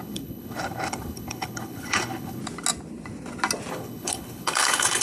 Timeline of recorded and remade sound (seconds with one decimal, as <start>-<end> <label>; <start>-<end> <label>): 0.0-2.4 remade; 2.4-3.7 recorded; 3.7-5.0 remade